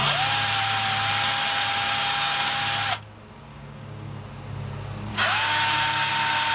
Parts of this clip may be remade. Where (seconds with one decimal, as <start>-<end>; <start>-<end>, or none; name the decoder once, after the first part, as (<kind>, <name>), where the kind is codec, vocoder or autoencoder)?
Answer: 1.7-2.6 (codec, DAC); 3.5-4.2; 5.1-6.1